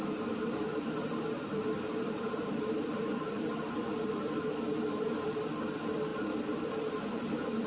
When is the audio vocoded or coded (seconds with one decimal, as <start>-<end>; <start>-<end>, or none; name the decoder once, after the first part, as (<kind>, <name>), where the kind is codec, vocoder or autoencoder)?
none